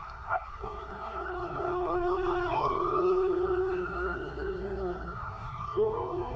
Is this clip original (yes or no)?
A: no